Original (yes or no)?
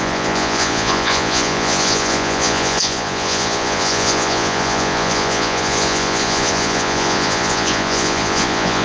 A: no